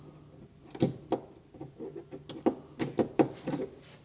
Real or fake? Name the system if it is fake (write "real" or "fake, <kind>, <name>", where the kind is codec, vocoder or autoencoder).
real